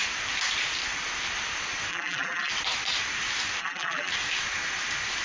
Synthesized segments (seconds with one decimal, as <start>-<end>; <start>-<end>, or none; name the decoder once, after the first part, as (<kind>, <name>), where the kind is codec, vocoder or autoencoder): 1.9-2.5 (vocoder, BigVGAN v2); 3.6-4.1